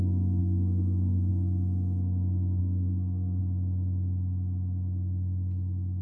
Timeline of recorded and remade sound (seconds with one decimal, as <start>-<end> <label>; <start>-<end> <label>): 0.0-0.4 recorded; 0.4-1.3 remade; 1.3-2.6 recorded; 2.6-3.4 remade; 3.4-6.0 recorded